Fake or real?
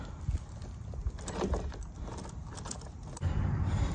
real